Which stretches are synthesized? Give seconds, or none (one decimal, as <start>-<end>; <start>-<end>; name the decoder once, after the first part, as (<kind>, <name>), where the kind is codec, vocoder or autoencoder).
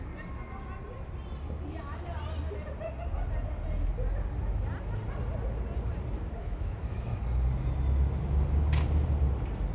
6.4-7.2 (autoencoder, DAC-VAE)